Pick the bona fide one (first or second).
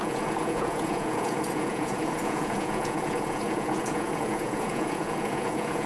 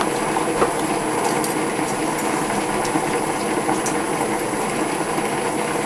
second